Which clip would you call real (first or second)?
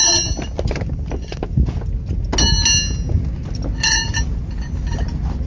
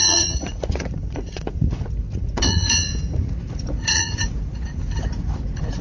first